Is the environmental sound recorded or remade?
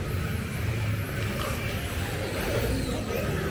recorded